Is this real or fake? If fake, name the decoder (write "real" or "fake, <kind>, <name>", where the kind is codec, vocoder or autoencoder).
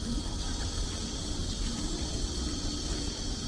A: fake, vocoder, WaveNeXt